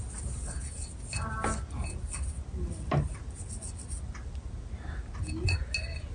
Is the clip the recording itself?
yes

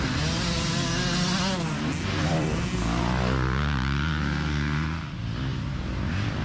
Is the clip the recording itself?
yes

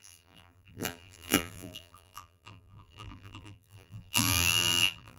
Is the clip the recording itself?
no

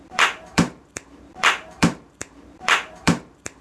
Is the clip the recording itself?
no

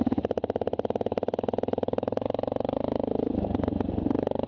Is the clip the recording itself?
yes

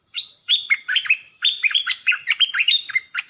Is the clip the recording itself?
no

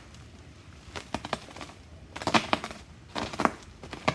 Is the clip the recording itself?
no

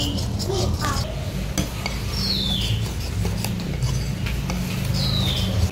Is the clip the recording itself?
yes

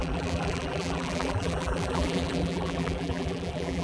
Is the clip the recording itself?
no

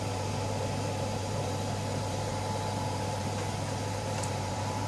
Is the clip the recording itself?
no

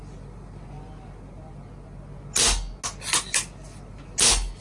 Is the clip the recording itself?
yes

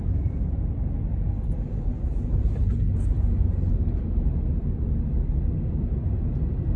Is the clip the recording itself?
yes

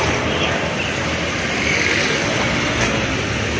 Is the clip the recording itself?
yes